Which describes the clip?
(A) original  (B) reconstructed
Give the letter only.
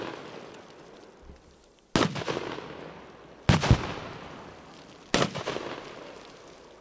A